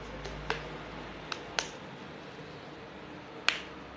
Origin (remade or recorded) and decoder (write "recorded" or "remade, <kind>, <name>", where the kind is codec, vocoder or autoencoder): recorded